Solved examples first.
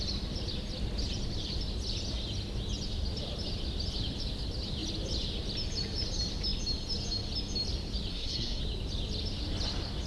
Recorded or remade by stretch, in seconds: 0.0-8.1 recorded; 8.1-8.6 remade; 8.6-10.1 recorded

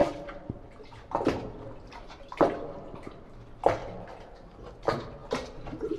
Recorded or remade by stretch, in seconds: 0.0-6.0 recorded

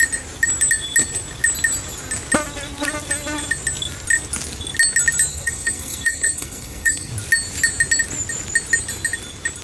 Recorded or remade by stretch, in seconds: 0.0-5.3 recorded; 5.3-7.1 remade; 7.1-9.6 recorded